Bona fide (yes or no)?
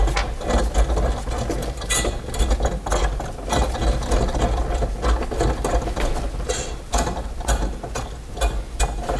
yes